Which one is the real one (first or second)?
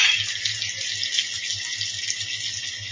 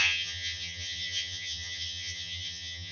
first